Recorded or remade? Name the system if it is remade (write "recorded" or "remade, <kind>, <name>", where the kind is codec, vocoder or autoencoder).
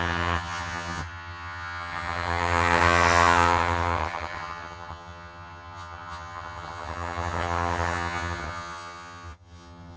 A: remade, vocoder, HiFi-GAN